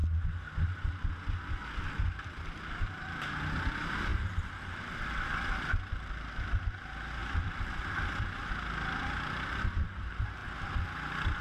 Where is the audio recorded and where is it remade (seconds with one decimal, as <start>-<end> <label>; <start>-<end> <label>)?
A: 0.0-7.2 recorded; 7.2-8.5 remade; 8.5-11.4 recorded